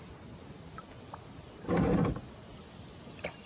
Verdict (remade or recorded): recorded